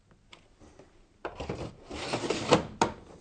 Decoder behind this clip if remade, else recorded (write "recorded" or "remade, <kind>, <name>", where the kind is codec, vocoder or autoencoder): recorded